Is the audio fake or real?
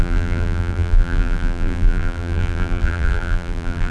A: fake